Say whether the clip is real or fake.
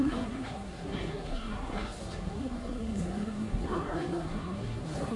fake